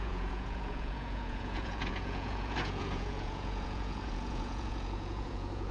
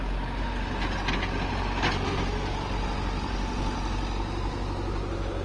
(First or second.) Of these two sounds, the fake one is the first